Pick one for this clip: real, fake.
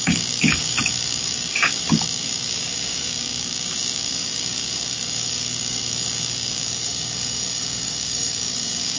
fake